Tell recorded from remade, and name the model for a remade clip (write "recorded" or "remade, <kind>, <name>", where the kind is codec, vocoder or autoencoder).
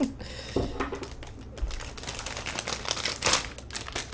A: recorded